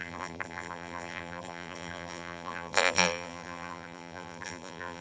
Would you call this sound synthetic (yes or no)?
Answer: yes